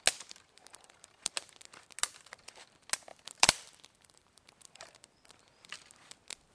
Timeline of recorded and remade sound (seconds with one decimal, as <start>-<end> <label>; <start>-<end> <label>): 0.0-0.7 recorded; 0.7-1.3 remade; 1.3-3.1 recorded; 3.1-4.9 remade; 4.9-6.5 recorded

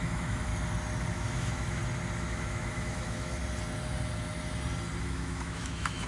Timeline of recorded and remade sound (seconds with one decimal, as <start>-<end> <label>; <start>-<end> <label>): 0.0-0.5 remade; 0.5-1.1 recorded; 1.1-1.8 remade; 1.8-2.3 recorded; 2.3-3.4 remade; 3.4-5.0 recorded; 5.0-6.1 remade

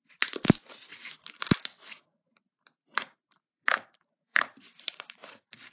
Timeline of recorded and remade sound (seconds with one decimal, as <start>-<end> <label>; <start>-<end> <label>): 0.0-0.9 recorded; 0.9-1.5 remade; 1.5-2.2 recorded; 2.2-5.7 remade